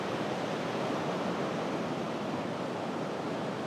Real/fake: real